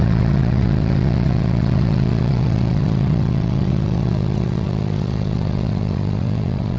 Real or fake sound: fake